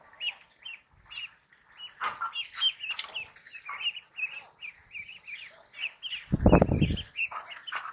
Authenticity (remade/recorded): recorded